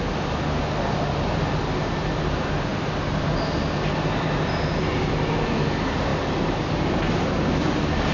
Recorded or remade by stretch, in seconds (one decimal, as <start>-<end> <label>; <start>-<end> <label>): 0.0-8.1 recorded